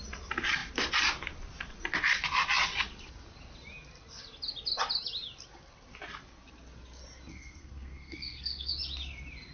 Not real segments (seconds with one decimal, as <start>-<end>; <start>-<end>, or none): 7.3-8.7